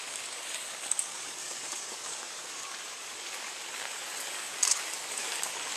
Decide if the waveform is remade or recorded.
remade